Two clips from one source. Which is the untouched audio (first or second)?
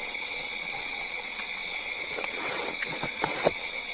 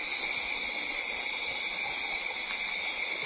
second